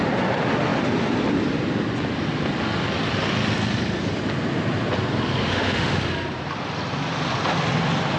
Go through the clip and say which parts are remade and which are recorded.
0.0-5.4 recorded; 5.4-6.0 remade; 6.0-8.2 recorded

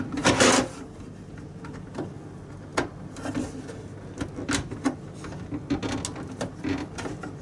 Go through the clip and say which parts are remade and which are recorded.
0.0-7.4 recorded

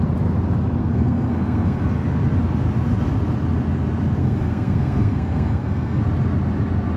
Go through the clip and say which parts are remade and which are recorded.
0.0-0.8 recorded; 0.8-1.8 remade; 1.8-4.2 recorded; 4.2-6.0 remade; 6.0-7.0 recorded

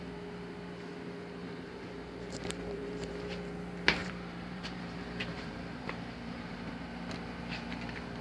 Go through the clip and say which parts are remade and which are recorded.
0.0-1.4 recorded; 1.4-3.1 remade; 3.1-4.0 recorded; 4.0-6.7 remade; 6.7-8.2 recorded

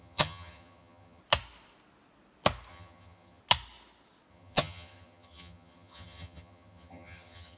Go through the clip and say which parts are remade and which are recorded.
0.0-1.2 remade; 1.2-2.7 recorded; 2.7-3.4 remade; 3.4-4.3 recorded; 4.3-7.6 remade

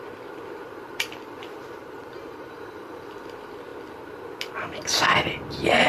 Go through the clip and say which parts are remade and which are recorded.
0.0-0.6 recorded; 0.6-3.1 remade; 3.1-5.9 recorded